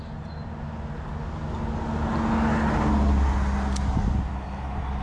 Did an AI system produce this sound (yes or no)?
no